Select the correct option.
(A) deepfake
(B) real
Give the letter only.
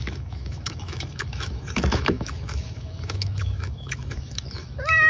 A